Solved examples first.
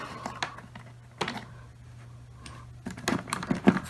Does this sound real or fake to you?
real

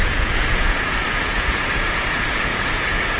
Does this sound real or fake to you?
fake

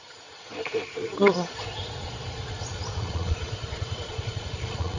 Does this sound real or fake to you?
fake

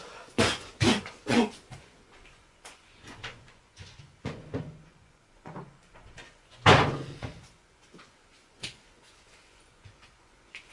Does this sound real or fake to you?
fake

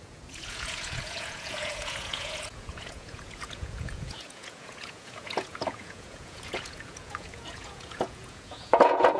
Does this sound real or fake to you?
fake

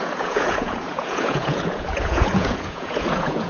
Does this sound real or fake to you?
fake